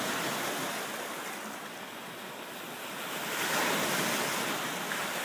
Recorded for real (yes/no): yes